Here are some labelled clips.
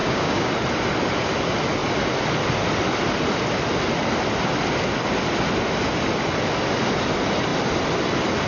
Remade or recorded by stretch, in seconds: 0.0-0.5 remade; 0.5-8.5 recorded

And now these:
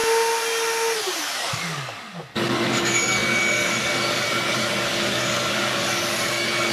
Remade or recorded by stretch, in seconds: 0.0-1.2 recorded; 1.2-6.7 remade